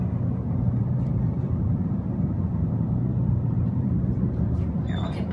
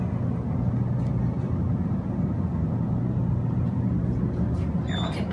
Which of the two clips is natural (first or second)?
second